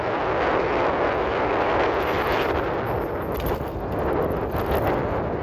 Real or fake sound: real